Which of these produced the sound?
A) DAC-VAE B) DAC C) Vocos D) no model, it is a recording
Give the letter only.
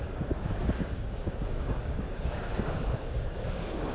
B